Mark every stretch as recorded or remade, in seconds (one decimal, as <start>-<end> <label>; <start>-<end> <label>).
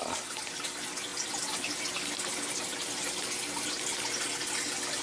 0.0-5.0 recorded